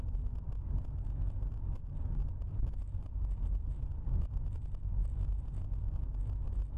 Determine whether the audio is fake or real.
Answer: real